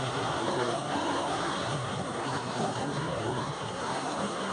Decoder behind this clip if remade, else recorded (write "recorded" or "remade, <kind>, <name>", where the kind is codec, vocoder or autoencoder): remade, codec, SNAC